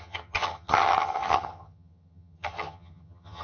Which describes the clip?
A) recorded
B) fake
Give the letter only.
B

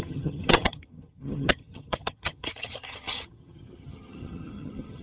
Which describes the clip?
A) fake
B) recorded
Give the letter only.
A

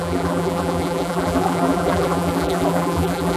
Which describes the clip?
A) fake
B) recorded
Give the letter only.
A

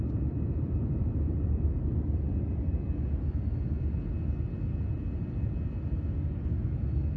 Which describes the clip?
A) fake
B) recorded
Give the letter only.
B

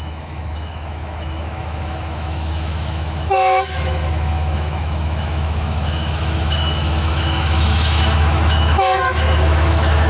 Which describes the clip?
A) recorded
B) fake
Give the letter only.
B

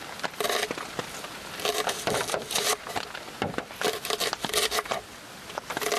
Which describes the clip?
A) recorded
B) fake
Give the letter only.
A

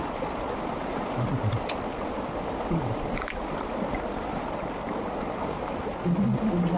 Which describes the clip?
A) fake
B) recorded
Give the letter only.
B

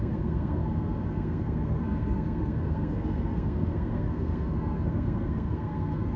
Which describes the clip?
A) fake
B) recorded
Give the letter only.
A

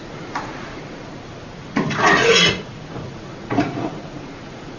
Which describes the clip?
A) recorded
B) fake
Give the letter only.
B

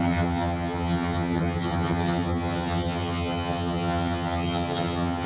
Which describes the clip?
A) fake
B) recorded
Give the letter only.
A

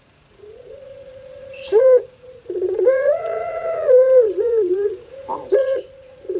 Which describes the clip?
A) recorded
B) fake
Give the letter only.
B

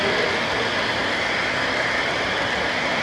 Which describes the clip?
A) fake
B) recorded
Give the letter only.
B